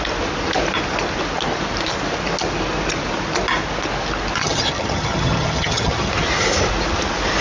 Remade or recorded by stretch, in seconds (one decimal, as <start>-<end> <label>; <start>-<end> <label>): 0.0-4.4 recorded; 4.4-6.1 remade; 6.1-7.4 recorded